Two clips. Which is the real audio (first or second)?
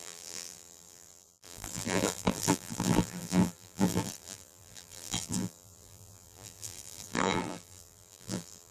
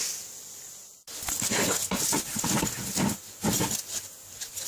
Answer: second